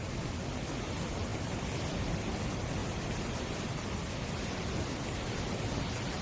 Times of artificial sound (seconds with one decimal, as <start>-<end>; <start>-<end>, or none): none